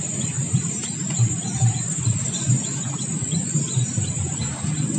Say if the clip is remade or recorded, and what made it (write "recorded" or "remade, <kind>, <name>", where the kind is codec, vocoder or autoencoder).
recorded